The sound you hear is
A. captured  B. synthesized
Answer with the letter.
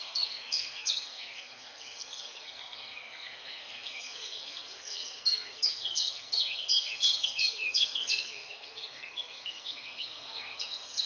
B